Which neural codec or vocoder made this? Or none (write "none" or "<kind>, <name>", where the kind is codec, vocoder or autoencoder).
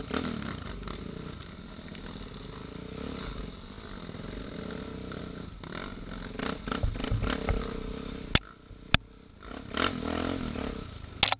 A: none